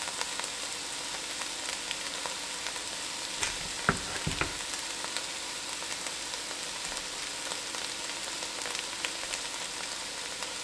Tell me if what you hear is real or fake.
real